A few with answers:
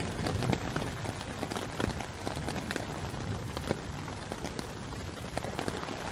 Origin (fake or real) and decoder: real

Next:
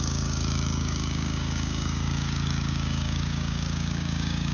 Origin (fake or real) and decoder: fake, codec, DAC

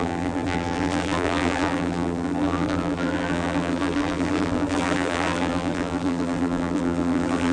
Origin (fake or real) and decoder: fake, vocoder, BigVGAN v2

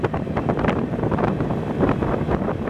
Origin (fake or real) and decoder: fake, vocoder, BigVGAN v2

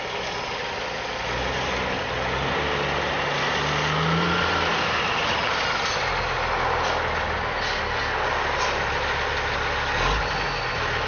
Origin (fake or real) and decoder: real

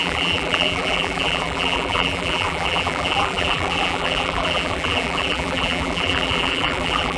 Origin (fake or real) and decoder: fake, vocoder, BigVGAN v2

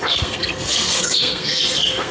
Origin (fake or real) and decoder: fake, codec, SNAC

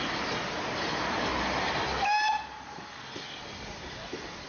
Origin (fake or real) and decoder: real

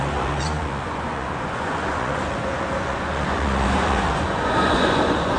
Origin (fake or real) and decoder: fake, vocoder, Vocos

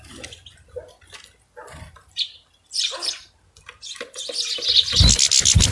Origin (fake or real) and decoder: real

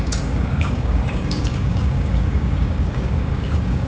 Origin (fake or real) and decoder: fake, codec, DAC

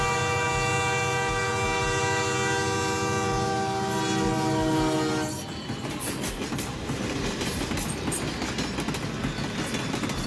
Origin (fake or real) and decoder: real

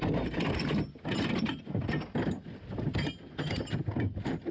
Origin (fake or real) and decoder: real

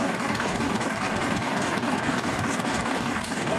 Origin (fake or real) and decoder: fake, codec, DAC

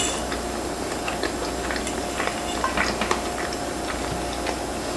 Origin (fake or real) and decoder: real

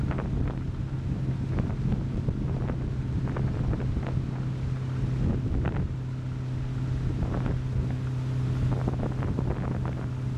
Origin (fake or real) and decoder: real